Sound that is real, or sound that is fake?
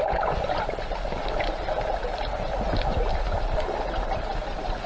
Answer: fake